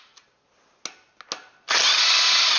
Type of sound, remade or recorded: recorded